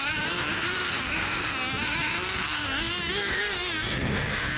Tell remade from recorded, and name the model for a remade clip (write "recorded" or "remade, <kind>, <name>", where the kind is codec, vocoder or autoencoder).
remade, codec, SNAC